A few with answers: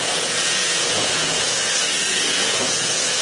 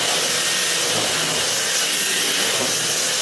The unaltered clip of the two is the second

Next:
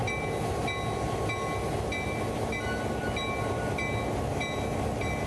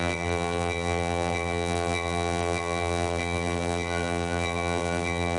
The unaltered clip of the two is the first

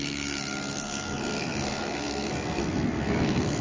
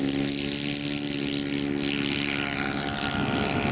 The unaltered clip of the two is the second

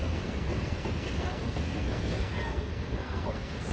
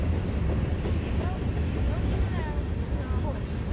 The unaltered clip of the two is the second